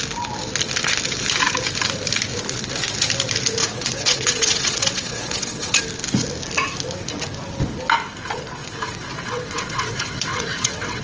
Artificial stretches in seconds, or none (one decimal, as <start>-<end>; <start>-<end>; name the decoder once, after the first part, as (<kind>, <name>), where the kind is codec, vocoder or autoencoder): 3.6-5.8 (vocoder, WaveNeXt); 8.6-11.0